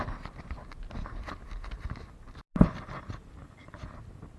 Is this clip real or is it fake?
real